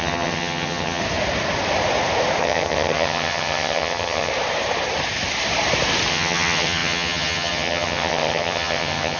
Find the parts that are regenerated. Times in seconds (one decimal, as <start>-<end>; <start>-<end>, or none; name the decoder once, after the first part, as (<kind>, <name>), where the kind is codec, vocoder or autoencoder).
0.0-1.0 (vocoder, HiFi-GAN); 2.4-4.3; 6.1-9.2